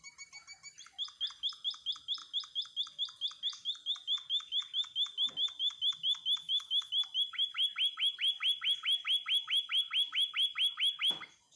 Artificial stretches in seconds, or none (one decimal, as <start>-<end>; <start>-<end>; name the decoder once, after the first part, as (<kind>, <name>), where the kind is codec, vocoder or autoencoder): 6.4-6.9 (autoencoder, DAC-VAE)